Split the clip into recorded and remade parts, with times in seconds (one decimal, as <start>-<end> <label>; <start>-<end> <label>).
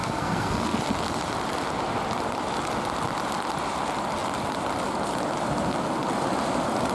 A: 0.0-0.8 remade; 0.8-6.9 recorded